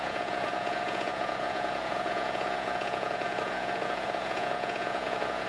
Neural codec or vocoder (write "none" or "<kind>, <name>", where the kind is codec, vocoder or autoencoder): vocoder, Vocos